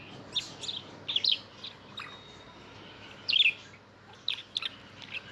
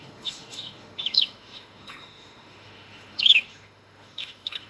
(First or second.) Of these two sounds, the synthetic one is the second